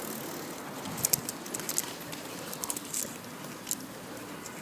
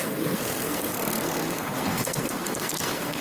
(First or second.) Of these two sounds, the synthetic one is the second